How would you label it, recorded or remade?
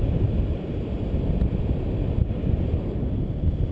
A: recorded